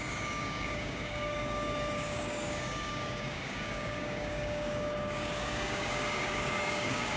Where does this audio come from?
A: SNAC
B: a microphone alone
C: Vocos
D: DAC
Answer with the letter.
D